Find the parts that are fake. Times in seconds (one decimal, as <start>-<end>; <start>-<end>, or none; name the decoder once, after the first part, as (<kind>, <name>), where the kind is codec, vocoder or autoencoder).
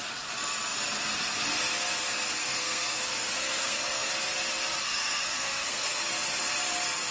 2.4-4.1 (codec, SNAC); 4.8-6.0